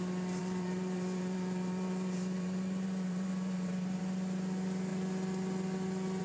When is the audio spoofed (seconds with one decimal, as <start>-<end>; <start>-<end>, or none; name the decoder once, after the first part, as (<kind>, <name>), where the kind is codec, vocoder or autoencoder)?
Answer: 0.4-4.0 (vocoder, BigVGAN v2)